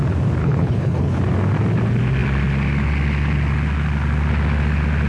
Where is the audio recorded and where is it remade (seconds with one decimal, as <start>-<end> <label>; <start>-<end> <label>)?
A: 0.0-0.4 recorded; 0.4-1.2 remade; 1.2-5.1 recorded